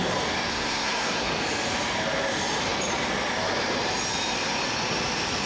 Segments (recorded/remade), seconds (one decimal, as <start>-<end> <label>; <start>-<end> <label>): 0.0-0.5 recorded; 0.5-1.3 remade; 1.3-5.5 recorded